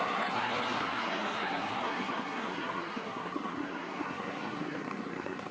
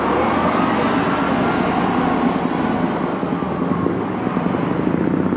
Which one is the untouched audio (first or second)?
second